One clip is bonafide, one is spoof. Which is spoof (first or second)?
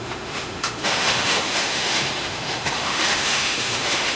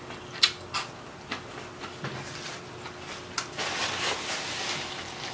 first